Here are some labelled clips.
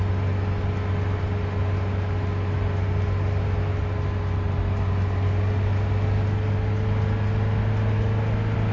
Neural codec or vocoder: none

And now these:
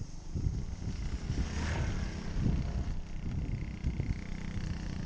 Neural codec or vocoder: none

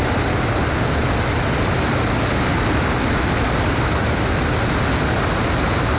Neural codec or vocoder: none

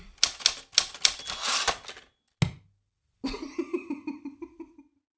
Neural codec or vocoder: none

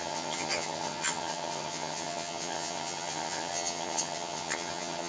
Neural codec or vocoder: vocoder, HiFi-GAN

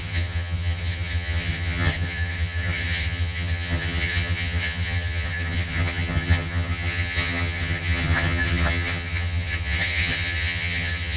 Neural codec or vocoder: vocoder, HiFi-GAN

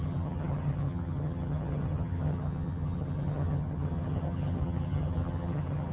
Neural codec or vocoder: vocoder, HiFi-GAN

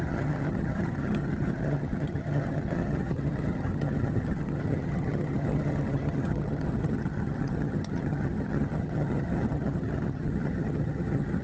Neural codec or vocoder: vocoder, HiFi-GAN